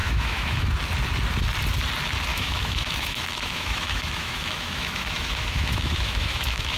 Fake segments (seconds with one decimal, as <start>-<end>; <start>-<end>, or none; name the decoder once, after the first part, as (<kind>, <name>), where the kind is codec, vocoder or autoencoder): 0.0-0.7 (autoencoder, DAC-VAE); 2.3-6.8